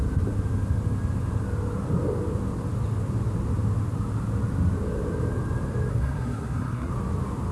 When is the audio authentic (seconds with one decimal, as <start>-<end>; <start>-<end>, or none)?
0.0-5.9; 6.9-7.5